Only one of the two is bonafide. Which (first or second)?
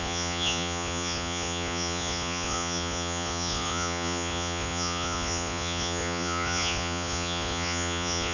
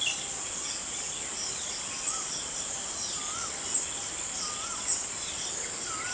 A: second